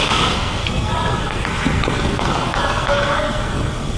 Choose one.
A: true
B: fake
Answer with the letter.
B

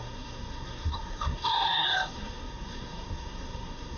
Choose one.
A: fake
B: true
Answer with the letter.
A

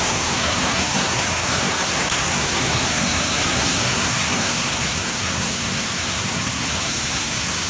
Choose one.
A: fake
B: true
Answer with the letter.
A